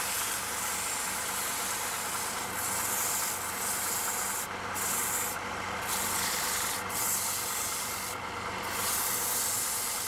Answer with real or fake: real